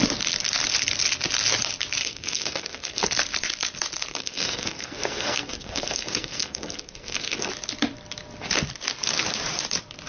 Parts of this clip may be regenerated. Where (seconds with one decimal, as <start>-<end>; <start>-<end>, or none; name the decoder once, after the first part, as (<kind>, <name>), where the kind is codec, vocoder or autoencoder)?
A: 2.0-3.0 (codec, SNAC); 4.1-7.5